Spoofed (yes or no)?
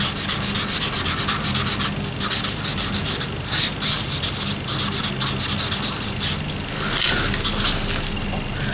no